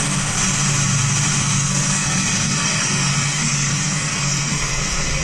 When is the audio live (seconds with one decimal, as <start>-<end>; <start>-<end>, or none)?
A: 0.4-1.4